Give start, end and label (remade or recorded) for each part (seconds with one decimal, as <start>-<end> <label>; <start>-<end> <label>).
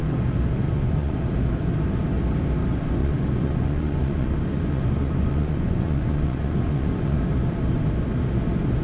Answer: 0.0-0.6 recorded; 0.6-1.2 remade; 1.2-3.0 recorded; 3.0-7.2 remade; 7.2-8.8 recorded